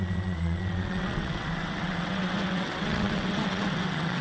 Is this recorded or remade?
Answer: remade